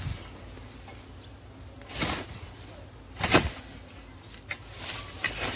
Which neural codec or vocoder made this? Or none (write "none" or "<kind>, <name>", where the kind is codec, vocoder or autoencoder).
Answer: none